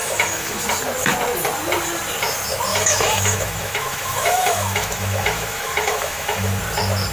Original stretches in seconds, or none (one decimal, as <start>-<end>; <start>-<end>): 0.6-2.7; 6.6-7.1